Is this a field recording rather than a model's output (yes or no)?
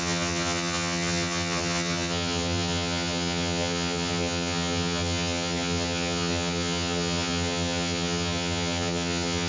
no